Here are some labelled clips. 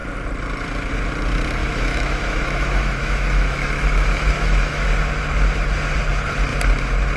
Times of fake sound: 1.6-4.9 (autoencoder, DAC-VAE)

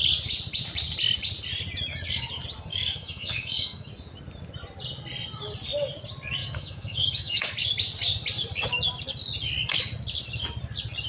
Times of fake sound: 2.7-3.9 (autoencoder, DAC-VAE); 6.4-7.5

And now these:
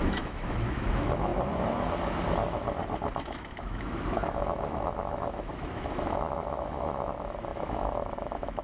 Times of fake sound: 0.0-1.3 (autoencoder, DAC-VAE); 3.2-8.6

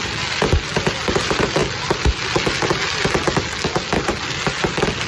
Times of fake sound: none

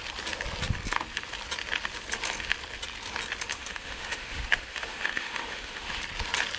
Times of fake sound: 3.5-6.0 (autoencoder, DAC-VAE)

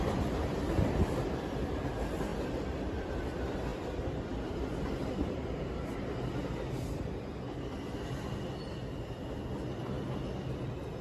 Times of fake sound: none

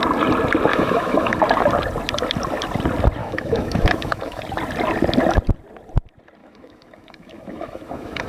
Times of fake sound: 0.7-1.4 (autoencoder, DAC-VAE); 3.2-4.4; 6.4-8.3